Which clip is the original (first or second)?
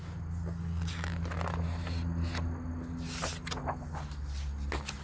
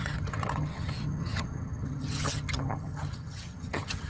first